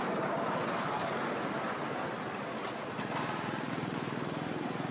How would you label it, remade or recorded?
recorded